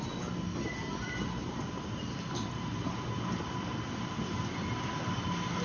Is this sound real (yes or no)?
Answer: yes